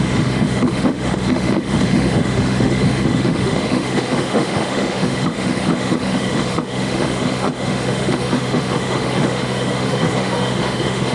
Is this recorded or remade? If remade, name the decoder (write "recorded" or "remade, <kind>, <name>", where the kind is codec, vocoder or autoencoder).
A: remade, autoencoder, DAC-VAE